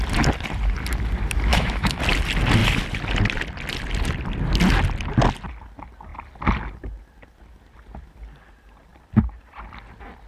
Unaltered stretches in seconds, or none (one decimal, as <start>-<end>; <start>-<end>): 0.0-1.5; 2.0-10.3